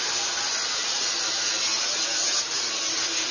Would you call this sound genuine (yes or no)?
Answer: yes